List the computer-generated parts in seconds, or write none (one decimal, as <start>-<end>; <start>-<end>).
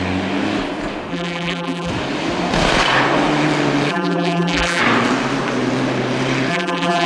1.1-1.9; 3.9-4.8; 6.5-7.1